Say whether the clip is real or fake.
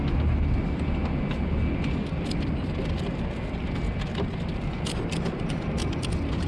real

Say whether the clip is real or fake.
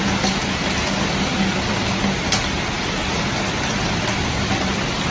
real